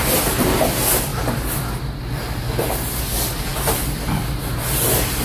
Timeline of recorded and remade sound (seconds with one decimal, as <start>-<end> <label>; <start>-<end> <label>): 0.0-5.2 recorded